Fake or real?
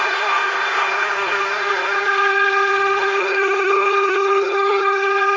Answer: fake